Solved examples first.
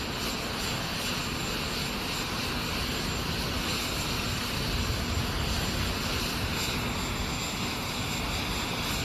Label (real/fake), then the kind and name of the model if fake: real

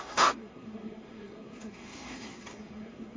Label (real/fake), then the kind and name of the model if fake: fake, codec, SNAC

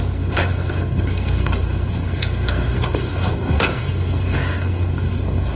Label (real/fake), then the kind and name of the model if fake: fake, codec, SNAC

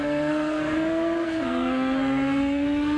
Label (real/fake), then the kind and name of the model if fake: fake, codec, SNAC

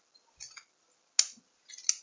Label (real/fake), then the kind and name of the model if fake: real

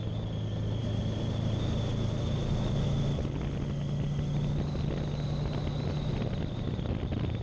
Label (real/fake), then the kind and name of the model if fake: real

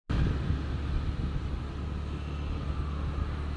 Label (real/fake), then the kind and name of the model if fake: real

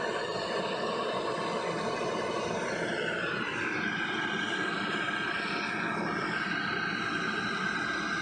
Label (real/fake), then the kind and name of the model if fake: real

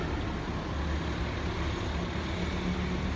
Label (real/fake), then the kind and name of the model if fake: real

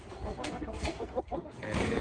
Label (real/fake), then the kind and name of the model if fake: fake, codec, SNAC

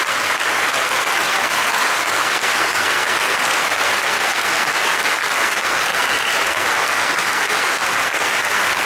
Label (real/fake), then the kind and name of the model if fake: fake, codec, SNAC